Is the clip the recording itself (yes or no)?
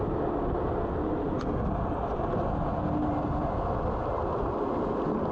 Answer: yes